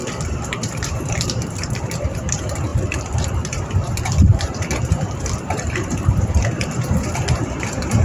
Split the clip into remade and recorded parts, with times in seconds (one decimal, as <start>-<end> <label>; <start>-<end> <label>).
0.0-8.0 remade